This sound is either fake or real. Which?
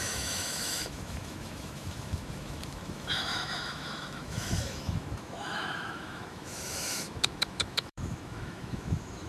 fake